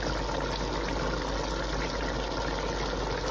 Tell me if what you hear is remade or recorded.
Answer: recorded